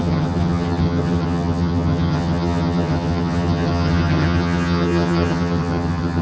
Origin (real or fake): fake